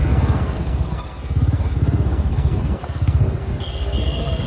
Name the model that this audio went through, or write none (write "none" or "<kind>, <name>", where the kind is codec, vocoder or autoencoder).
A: codec, SNAC